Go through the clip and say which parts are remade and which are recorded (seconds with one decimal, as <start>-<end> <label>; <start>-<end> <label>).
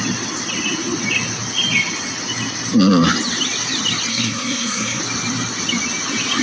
0.0-4.1 recorded; 4.1-5.0 remade; 5.0-6.4 recorded